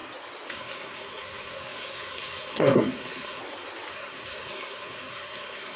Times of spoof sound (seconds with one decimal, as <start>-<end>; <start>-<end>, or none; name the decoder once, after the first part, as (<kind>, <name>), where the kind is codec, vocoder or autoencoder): 0.5-3.4 (codec, SNAC); 3.9-5.8